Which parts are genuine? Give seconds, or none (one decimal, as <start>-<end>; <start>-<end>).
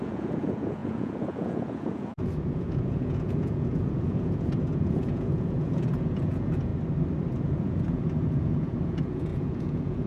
6.7-7.3